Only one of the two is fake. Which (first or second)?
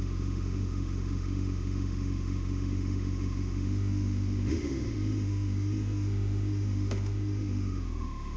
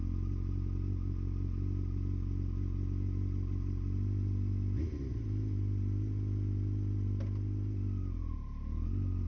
first